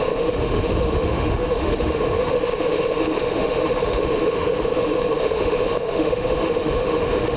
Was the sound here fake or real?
fake